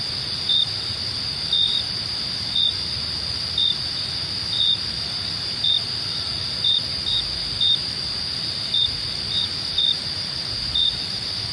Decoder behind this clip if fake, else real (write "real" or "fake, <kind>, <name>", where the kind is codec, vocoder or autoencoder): fake, vocoder, BigVGAN v2